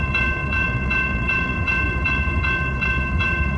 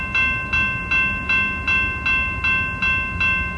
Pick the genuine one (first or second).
second